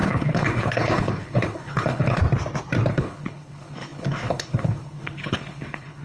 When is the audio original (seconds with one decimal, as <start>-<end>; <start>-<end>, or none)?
2.2-2.9